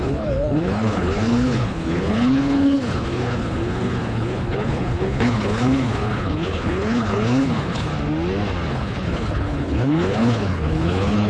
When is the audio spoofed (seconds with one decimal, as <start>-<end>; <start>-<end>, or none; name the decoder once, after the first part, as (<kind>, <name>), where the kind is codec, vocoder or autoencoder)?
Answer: 0.0-7.9 (codec, HILCodec); 8.7-11.3